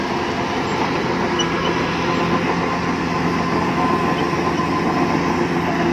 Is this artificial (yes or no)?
no